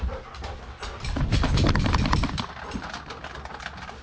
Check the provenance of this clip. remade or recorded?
recorded